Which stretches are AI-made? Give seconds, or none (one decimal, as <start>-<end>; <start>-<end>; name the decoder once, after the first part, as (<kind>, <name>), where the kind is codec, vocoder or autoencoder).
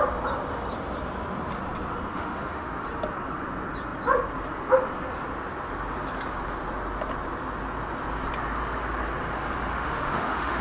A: 2.1-2.8 (autoencoder, DAC-VAE); 9.7-10.6